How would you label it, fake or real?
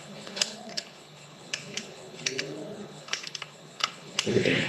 fake